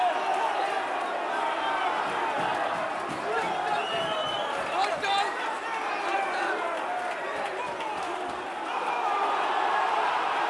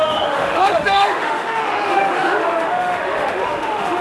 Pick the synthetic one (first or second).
second